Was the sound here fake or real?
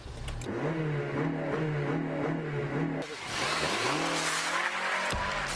real